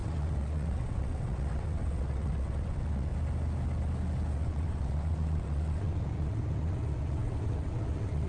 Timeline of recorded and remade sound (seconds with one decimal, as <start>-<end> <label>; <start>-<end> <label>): 0.0-3.1 remade; 3.1-4.3 recorded; 4.3-8.3 remade